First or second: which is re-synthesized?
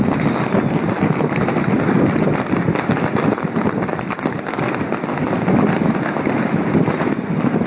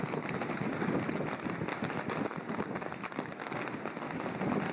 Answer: first